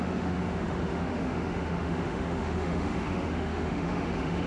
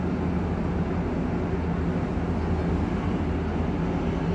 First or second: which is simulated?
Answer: first